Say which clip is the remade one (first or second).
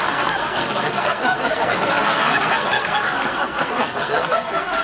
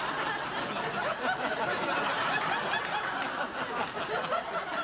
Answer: first